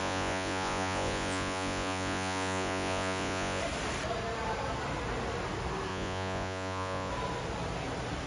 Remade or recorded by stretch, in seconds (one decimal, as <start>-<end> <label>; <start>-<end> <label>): 0.0-3.6 remade; 3.6-5.9 recorded; 5.9-7.1 remade; 7.1-8.3 recorded